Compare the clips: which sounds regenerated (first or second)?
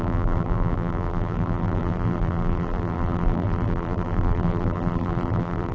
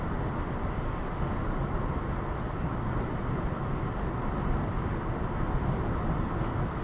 first